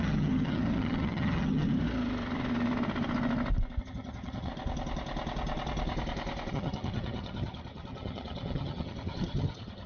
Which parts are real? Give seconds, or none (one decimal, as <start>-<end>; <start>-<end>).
1.7-3.8; 4.5-6.5